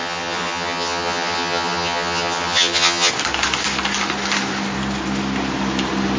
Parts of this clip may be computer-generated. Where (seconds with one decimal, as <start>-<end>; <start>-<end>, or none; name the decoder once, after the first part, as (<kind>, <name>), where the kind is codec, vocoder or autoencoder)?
0.0-3.1 (vocoder, HiFi-GAN)